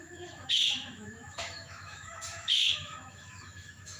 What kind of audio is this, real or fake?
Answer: fake